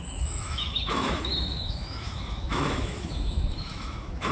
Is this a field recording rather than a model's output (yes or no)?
no